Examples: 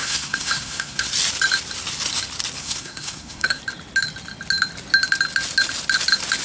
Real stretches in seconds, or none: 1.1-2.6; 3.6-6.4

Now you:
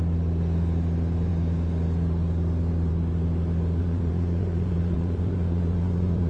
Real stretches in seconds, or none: 0.0-3.8

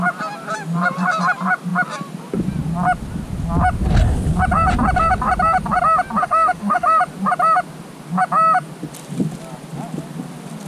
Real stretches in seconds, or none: 0.0-6.2; 7.0-10.7

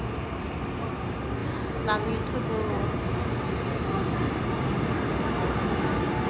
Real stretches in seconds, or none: 0.0-6.3

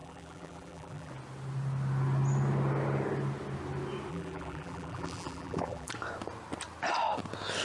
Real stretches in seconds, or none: 1.1-4.1; 5.9-7.6